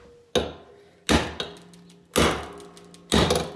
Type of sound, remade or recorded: recorded